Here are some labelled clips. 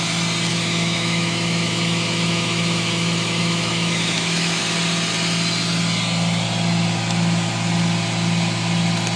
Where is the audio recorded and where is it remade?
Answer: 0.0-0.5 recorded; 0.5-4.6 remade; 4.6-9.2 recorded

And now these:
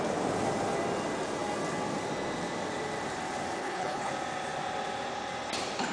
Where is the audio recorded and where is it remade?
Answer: 0.0-3.6 recorded; 3.6-4.1 remade; 4.1-5.9 recorded

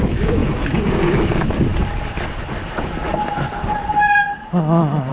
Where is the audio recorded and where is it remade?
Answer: 0.0-0.4 remade; 0.4-1.1 recorded; 1.1-1.7 remade; 1.7-5.1 recorded